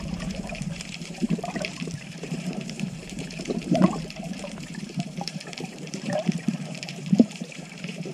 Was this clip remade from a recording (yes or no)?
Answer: yes